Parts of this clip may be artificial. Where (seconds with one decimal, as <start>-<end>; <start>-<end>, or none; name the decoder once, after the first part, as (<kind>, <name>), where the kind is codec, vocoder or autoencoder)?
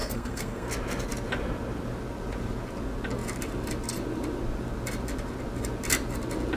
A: 0.0-0.7 (codec, SNAC)